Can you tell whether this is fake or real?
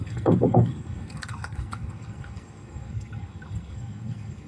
fake